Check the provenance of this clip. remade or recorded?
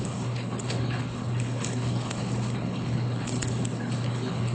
remade